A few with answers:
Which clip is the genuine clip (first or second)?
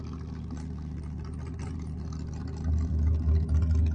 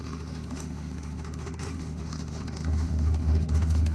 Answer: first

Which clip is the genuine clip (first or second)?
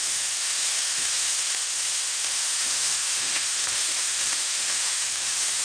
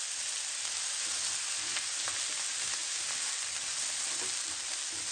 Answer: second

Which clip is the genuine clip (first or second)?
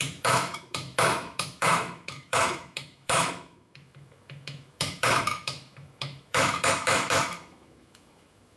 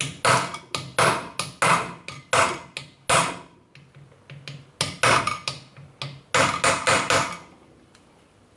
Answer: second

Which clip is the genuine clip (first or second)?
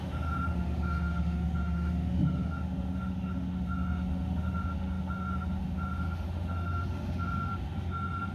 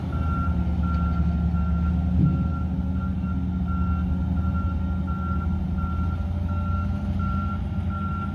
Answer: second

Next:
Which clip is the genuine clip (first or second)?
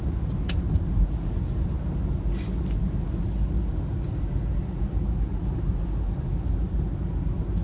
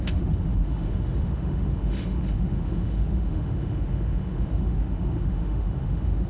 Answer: first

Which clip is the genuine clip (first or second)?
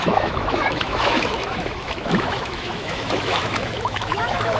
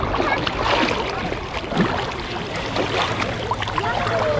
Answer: second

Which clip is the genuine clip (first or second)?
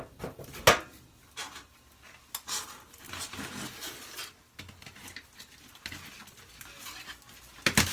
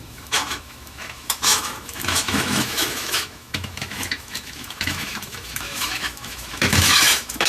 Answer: first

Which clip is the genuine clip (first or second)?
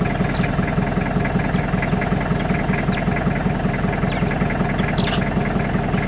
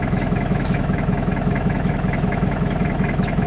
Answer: first